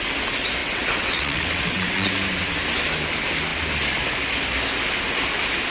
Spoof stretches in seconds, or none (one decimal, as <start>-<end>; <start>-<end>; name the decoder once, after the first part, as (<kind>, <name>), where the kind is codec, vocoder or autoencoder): 0.6-2.1 (vocoder, WaveNeXt)